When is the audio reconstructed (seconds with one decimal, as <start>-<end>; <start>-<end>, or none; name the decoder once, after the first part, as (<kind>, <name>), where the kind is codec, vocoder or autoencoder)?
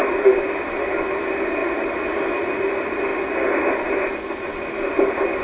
none